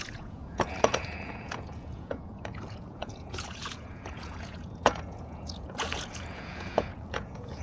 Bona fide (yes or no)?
no